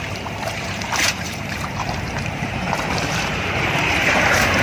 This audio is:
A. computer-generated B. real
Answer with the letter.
A